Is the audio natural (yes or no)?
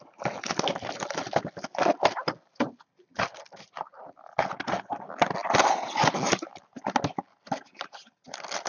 yes